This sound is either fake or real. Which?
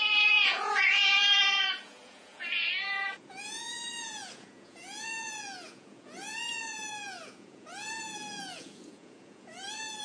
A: fake